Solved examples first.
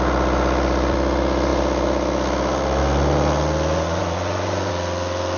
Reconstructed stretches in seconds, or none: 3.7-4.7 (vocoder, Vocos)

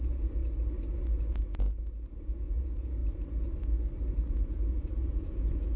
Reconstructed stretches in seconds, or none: 0.0-0.4 (vocoder, Vocos); 2.2-3.0; 4.5-5.8